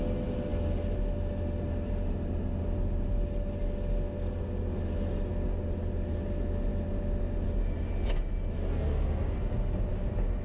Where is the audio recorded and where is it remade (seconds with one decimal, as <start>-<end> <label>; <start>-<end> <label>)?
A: 0.0-10.4 recorded

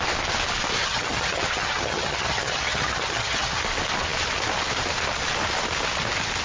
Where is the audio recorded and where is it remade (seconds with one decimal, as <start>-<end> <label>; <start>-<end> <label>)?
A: 0.0-0.8 recorded; 0.8-3.6 remade; 3.6-6.4 recorded

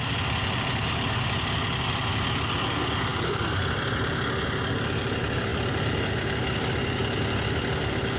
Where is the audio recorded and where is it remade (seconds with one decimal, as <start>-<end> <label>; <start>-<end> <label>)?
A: 0.0-8.2 recorded

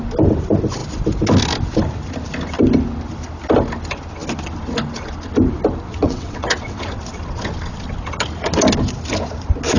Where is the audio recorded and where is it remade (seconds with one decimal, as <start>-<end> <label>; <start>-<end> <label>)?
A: 0.0-5.9 recorded; 5.9-6.8 remade; 6.8-9.8 recorded

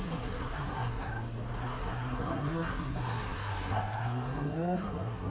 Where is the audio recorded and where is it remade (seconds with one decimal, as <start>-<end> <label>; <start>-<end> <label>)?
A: 0.0-1.1 remade; 1.1-1.6 recorded; 1.6-5.3 remade

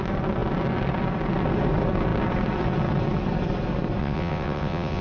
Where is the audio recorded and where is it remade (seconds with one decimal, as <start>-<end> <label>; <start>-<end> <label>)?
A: 0.0-4.0 recorded; 4.0-5.0 remade

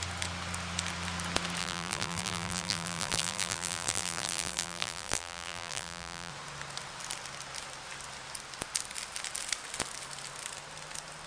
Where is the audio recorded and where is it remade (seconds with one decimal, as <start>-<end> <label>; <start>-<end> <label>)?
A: 0.0-1.6 recorded; 1.6-6.3 remade; 6.3-11.3 recorded

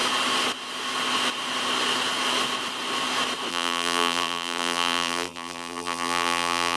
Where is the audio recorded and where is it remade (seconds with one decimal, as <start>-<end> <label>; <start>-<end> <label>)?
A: 0.0-3.5 recorded; 3.5-6.8 remade